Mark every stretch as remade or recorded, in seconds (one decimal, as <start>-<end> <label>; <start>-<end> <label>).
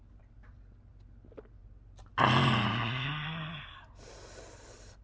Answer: 0.0-5.0 recorded